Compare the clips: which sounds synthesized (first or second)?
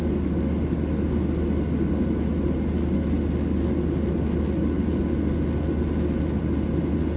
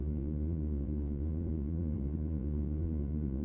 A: second